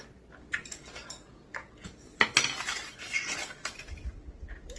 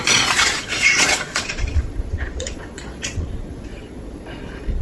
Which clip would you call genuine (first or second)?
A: first